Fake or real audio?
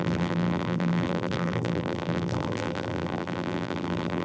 fake